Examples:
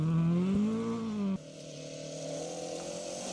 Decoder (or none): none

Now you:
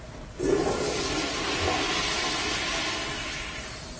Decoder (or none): none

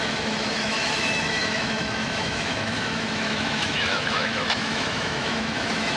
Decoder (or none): autoencoder, DAC-VAE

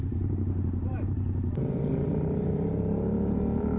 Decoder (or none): vocoder, BigVGAN v2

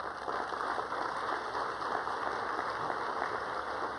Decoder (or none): none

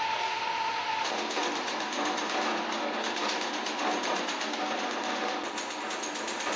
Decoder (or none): none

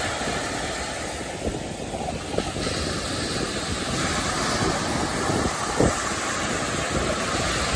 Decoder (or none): none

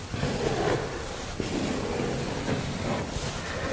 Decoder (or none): none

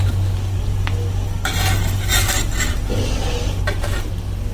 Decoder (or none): none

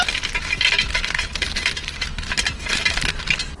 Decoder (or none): none